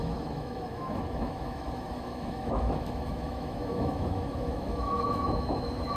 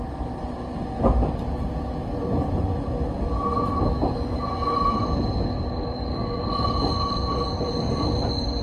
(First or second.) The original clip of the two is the second